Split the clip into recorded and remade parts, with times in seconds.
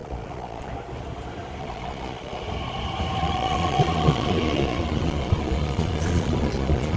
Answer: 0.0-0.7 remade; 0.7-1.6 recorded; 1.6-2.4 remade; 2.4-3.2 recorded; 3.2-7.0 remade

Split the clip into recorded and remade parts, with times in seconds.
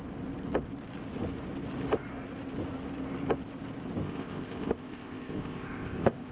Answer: 0.0-4.0 recorded; 4.0-6.3 remade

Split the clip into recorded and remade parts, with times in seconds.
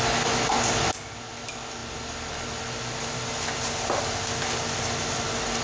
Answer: 0.0-5.6 recorded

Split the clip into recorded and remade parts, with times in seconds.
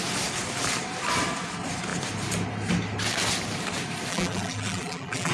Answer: 0.0-4.1 recorded; 4.1-5.3 remade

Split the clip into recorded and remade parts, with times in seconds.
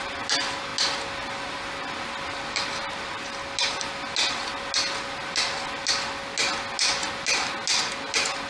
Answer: 0.0-8.5 recorded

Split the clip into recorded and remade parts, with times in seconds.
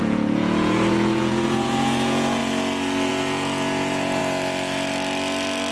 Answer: 0.0-2.4 remade; 2.4-3.1 recorded; 3.1-4.2 remade; 4.2-5.7 recorded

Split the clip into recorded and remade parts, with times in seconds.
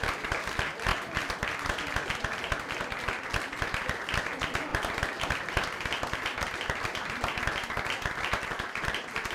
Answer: 0.0-4.7 recorded; 4.7-7.4 remade; 7.4-9.3 recorded